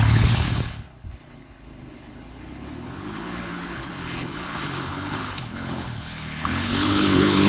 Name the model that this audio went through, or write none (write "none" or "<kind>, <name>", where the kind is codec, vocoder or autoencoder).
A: codec, HILCodec